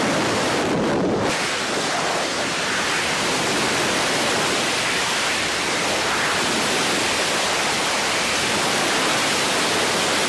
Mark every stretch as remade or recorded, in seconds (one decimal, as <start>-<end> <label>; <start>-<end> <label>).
0.0-10.3 remade